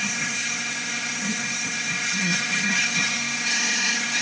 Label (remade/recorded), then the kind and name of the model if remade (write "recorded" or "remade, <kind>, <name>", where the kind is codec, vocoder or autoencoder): remade, codec, SNAC